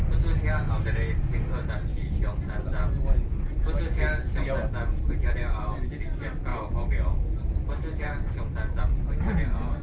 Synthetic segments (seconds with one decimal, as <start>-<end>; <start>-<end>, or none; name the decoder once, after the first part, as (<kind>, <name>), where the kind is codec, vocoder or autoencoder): none